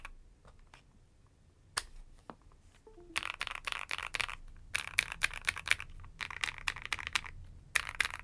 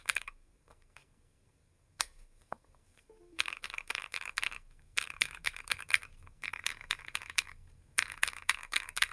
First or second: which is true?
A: first